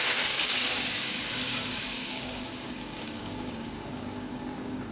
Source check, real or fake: fake